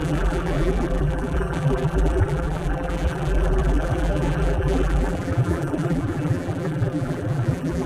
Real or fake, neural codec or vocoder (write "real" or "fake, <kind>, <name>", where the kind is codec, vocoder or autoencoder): fake, vocoder, BigVGAN v2